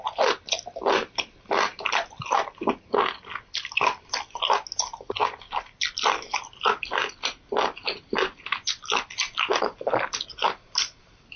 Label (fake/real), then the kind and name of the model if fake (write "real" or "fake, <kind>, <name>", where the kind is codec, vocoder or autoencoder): real